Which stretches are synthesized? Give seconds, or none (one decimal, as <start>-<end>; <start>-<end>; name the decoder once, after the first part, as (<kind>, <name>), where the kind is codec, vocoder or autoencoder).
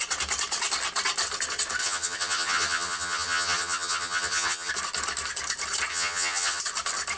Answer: 1.8-4.7 (vocoder, HiFi-GAN); 5.9-6.6